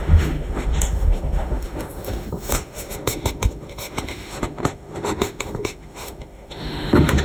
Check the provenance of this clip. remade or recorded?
remade